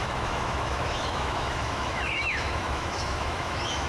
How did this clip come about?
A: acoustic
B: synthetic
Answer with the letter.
B